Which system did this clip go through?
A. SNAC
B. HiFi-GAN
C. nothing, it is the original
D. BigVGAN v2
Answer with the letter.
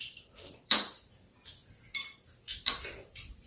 D